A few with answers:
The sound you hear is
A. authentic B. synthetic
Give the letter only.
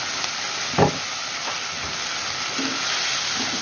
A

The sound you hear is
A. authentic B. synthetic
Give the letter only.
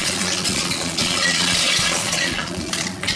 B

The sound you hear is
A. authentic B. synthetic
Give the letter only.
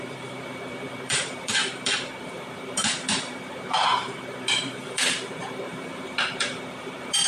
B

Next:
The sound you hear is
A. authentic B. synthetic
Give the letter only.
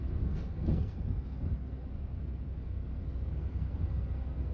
B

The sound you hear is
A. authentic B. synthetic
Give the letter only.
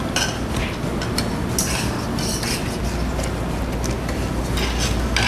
A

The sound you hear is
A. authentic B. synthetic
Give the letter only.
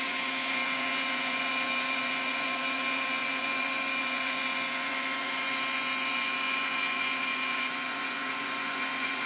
B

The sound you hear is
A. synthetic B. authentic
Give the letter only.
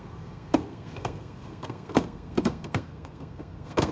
A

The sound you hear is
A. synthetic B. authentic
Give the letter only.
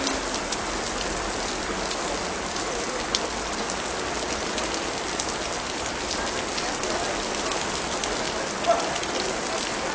B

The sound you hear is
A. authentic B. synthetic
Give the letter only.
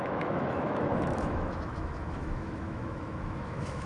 B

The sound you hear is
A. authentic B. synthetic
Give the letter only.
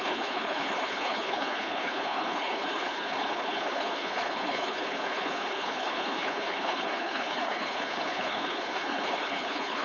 B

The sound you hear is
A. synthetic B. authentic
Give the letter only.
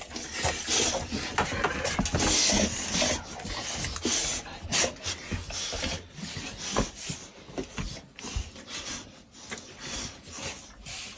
B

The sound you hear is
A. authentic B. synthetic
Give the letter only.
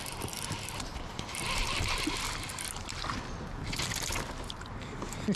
A